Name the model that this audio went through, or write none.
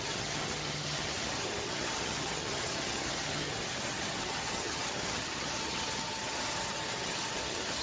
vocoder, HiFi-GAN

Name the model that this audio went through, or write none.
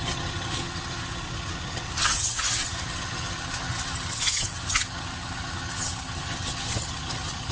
vocoder, HiFi-GAN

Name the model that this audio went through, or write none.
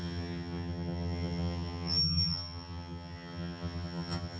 vocoder, HiFi-GAN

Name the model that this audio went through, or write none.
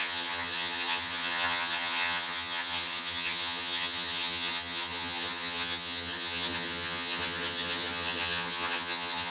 vocoder, HiFi-GAN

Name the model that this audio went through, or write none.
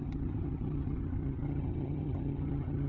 vocoder, HiFi-GAN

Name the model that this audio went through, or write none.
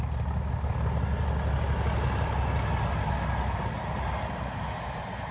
none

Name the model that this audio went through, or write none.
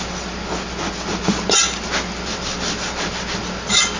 none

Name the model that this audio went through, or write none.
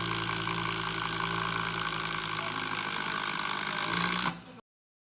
none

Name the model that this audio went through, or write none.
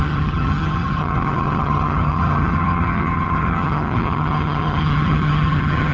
vocoder, HiFi-GAN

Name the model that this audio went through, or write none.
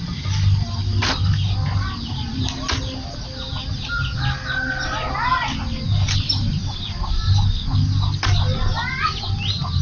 none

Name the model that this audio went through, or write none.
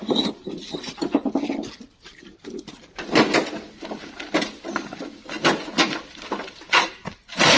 none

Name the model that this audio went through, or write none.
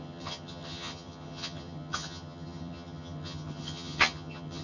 vocoder, HiFi-GAN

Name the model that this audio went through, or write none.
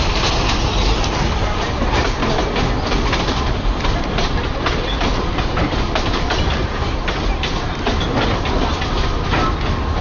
none